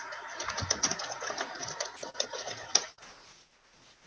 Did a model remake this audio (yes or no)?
yes